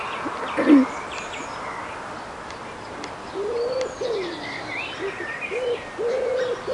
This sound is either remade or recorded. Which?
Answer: recorded